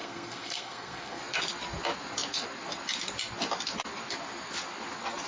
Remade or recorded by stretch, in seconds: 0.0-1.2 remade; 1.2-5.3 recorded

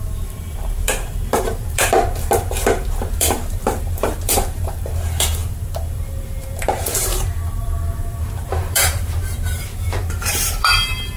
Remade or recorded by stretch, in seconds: 0.0-11.2 remade

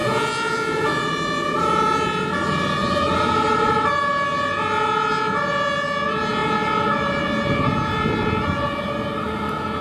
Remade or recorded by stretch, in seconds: 0.0-1.1 remade; 1.1-9.8 recorded

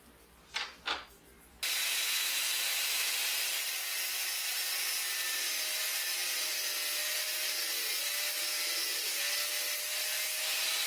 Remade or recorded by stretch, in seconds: 0.0-1.9 recorded; 1.9-2.6 remade; 2.6-10.9 recorded

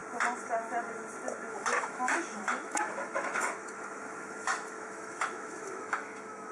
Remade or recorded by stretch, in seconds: 0.0-1.5 recorded; 1.5-6.5 remade

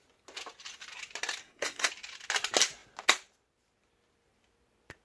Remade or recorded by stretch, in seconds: 0.0-1.4 recorded; 1.4-1.9 remade; 1.9-5.0 recorded

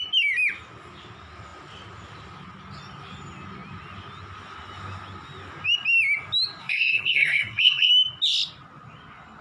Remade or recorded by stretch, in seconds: 0.0-6.6 recorded; 6.6-7.9 remade; 7.9-9.4 recorded

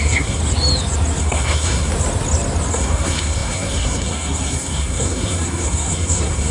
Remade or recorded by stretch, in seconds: 0.0-0.4 remade; 0.4-1.2 recorded; 1.2-1.9 remade; 1.9-2.7 recorded; 2.7-6.5 remade